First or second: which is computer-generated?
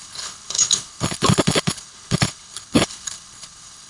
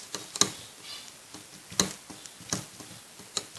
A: first